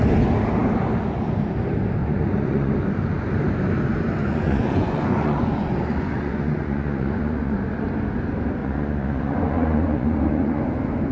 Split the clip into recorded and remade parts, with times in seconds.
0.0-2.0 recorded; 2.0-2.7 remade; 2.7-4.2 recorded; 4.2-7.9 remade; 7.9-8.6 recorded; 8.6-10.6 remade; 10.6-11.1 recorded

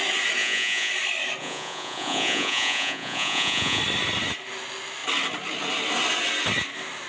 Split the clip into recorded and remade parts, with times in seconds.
0.0-0.4 recorded; 0.4-0.9 remade; 0.9-1.4 recorded; 1.4-3.8 remade; 3.8-7.1 recorded

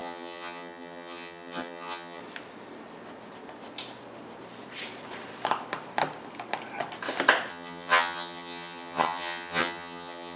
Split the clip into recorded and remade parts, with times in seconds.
0.0-2.2 remade; 2.2-7.5 recorded; 7.5-10.4 remade

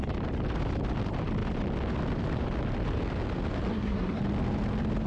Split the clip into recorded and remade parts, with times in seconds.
0.0-3.7 recorded; 3.7-4.2 remade; 4.2-5.1 recorded

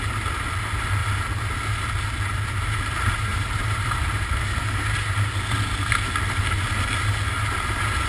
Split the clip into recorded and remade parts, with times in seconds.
0.0-3.3 recorded; 3.3-5.3 remade; 5.3-8.1 recorded

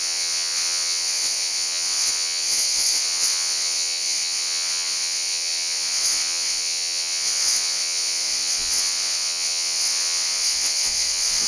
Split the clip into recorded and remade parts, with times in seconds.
0.0-11.5 remade